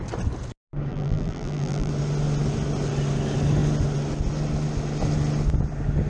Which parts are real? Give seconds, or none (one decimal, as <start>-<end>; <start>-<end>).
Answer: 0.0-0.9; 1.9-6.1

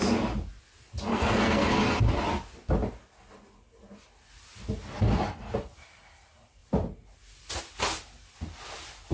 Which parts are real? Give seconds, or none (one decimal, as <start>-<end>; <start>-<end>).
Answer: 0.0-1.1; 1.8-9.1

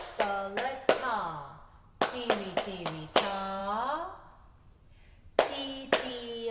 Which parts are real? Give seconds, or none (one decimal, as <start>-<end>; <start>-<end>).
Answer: 0.0-6.5